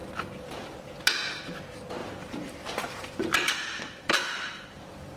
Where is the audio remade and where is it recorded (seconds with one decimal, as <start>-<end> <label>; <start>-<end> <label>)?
0.0-1.0 remade; 1.0-2.0 recorded; 2.0-5.2 remade